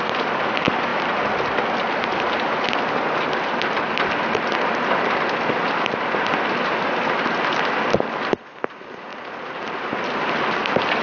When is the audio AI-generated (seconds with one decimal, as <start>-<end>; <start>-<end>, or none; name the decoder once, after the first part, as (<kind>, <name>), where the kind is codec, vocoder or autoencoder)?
9.1-10.3 (vocoder, BigVGAN v2)